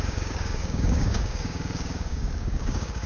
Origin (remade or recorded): remade